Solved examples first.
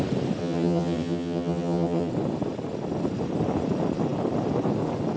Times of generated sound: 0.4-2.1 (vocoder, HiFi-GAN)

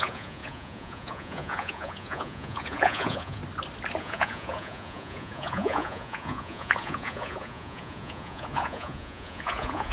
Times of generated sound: 0.0-3.4 (vocoder, Vocos); 4.0-9.9